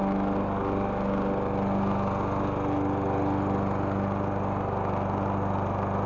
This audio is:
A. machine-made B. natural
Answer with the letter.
B